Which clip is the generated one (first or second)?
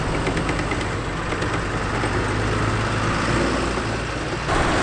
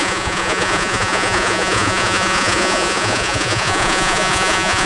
second